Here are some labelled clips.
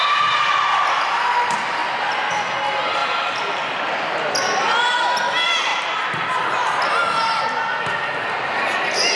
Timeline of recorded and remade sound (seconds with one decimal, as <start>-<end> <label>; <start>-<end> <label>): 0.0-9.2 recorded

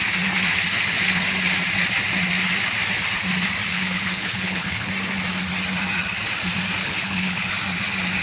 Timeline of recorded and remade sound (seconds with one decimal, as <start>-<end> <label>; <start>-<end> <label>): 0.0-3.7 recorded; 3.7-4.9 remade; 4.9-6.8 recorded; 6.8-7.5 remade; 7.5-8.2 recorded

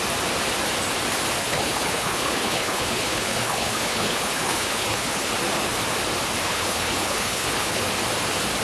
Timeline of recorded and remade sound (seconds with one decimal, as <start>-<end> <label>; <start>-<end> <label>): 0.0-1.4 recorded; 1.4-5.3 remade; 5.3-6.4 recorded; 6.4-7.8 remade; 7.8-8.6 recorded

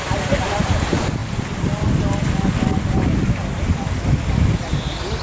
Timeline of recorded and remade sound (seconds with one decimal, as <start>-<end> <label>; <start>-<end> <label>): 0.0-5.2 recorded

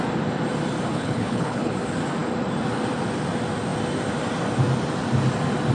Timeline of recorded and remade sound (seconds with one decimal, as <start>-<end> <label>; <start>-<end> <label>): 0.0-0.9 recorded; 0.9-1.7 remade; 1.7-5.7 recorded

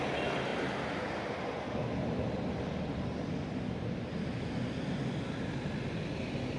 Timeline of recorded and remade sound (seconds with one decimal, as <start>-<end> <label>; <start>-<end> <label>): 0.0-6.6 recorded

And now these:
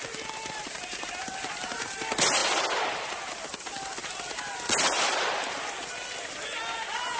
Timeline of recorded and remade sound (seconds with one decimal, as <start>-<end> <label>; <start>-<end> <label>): 0.0-7.2 recorded